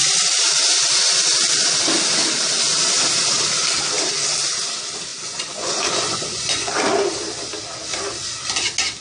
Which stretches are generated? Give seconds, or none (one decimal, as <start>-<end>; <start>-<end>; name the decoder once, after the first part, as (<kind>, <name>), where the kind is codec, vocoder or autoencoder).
5.1-6.7 (vocoder, Vocos)